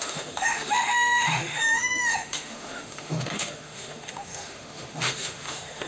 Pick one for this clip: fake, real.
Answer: fake